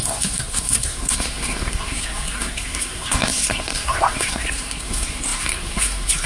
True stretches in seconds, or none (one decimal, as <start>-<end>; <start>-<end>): none